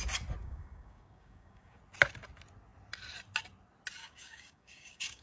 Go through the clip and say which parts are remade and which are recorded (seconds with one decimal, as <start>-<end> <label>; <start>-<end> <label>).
0.0-0.4 recorded; 0.4-1.8 remade; 1.8-4.0 recorded; 4.0-5.2 remade